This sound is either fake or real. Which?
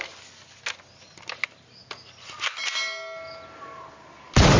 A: real